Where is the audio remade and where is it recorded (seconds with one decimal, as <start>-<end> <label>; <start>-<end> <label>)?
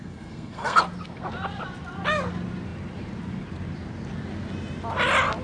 0.0-0.8 remade; 0.8-5.4 recorded